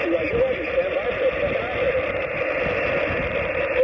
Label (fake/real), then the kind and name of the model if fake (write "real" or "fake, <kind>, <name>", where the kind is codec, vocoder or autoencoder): real